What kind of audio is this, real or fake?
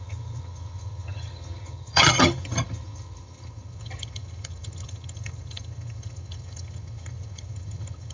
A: fake